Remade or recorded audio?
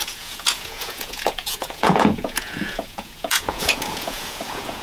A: remade